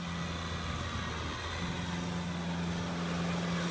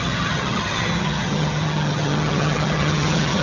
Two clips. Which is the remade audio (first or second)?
second